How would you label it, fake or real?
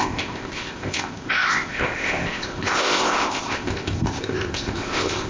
fake